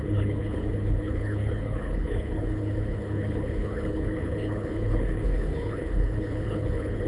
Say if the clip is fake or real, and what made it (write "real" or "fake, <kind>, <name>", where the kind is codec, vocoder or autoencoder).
fake, codec, HILCodec